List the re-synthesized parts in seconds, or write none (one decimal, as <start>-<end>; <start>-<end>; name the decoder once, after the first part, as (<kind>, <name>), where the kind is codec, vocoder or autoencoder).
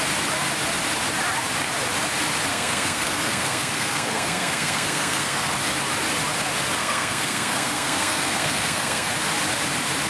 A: 2.5-5.5 (codec, SNAC); 6.8-9.1